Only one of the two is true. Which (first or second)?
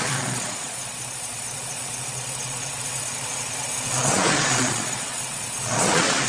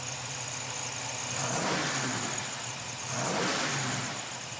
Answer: second